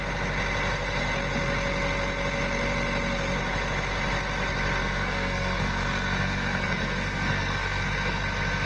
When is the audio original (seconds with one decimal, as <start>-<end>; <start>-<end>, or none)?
0.0-4.8; 8.2-8.7